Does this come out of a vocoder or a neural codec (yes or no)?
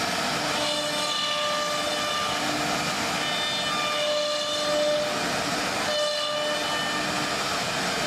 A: no